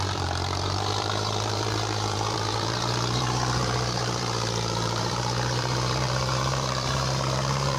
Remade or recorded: remade